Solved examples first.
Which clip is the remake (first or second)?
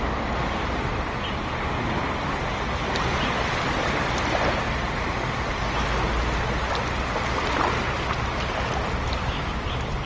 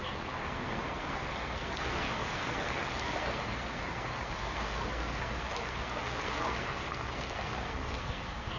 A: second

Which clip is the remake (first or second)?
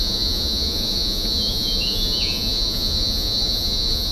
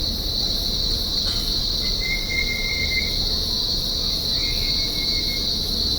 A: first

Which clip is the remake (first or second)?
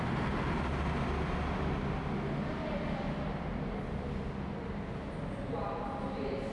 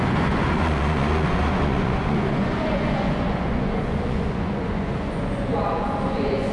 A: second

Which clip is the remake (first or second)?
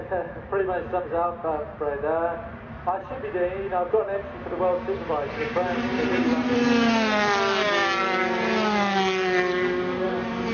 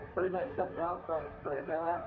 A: second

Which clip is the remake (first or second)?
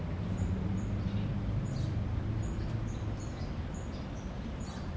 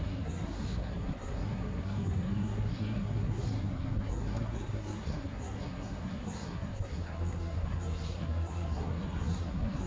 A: second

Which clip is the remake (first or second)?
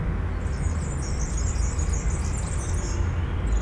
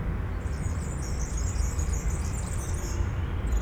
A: second